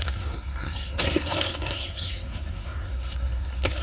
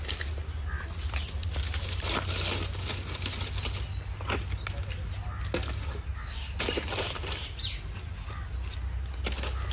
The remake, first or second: first